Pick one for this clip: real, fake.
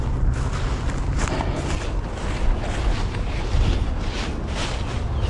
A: real